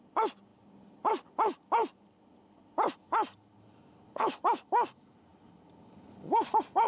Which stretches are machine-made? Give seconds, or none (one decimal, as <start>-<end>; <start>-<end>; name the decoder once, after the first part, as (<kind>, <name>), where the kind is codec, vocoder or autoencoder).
0.5-4.0 (vocoder, BigVGAN v2); 5.3-6.5